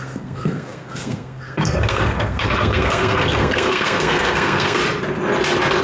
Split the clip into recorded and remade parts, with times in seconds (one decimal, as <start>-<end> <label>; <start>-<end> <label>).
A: 0.0-4.8 remade; 4.8-5.8 recorded